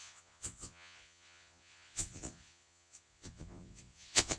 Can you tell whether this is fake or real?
fake